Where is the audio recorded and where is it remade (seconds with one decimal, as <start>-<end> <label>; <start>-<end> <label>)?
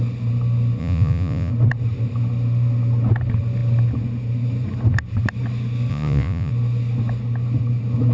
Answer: 0.0-0.8 recorded; 0.8-1.5 remade; 1.5-5.9 recorded; 5.9-6.5 remade; 6.5-8.1 recorded